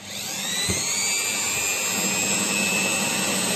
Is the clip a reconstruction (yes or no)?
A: no